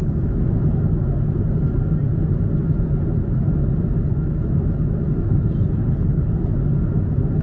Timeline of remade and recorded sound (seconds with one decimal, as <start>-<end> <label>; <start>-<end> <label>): 0.0-5.8 recorded; 5.8-6.5 remade; 6.5-7.4 recorded